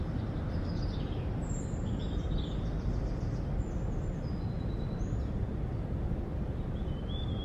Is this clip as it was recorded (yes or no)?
yes